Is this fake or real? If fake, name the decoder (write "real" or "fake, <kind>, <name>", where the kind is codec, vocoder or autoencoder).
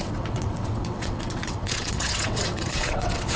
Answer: fake, vocoder, WaveNeXt